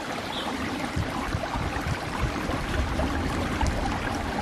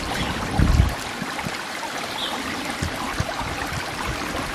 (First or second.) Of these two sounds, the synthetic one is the first